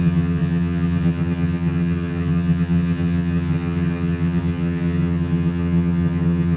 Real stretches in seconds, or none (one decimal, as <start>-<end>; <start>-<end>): none